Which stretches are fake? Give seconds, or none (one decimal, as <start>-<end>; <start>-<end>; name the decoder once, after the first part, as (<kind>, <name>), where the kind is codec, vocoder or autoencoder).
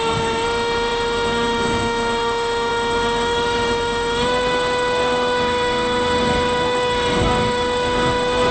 0.0-8.5 (autoencoder, DAC-VAE)